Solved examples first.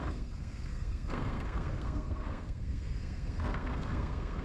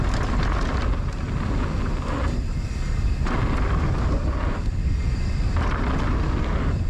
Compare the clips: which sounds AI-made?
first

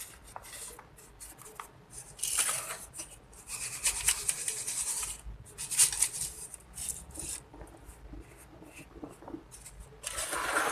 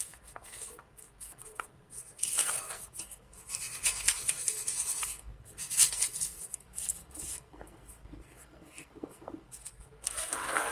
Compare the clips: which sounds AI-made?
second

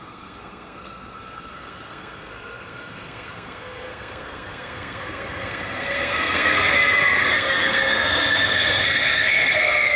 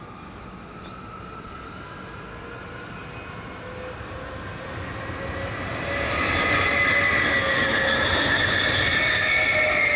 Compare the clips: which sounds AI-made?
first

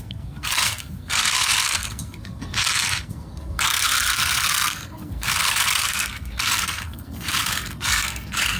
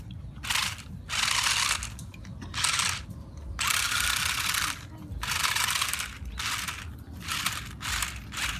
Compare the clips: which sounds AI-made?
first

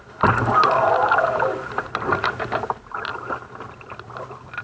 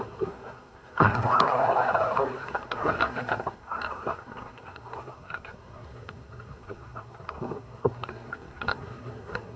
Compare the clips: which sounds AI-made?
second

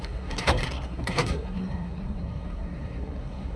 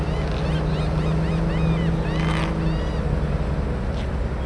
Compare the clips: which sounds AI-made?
first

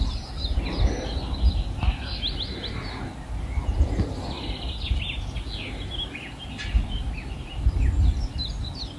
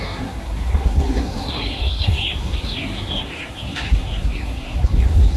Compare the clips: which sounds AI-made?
second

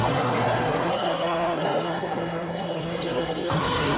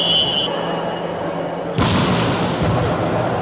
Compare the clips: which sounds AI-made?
first